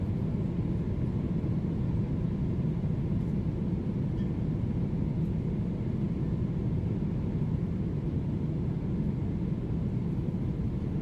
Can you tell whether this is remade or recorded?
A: remade